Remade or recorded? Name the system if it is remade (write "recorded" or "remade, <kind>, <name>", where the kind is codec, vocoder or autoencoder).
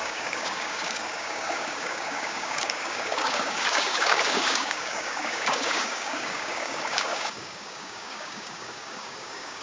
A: remade, codec, DAC